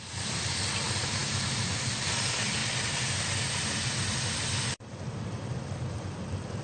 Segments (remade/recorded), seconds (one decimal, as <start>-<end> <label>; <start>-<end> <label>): 0.0-6.6 recorded